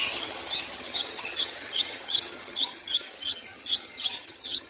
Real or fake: fake